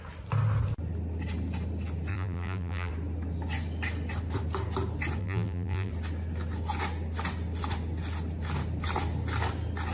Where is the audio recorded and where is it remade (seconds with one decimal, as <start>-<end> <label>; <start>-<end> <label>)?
0.0-2.1 recorded; 2.1-2.9 remade; 2.9-5.2 recorded; 5.2-5.9 remade; 5.9-9.9 recorded